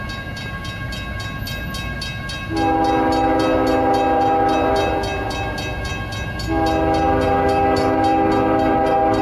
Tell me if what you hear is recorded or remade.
recorded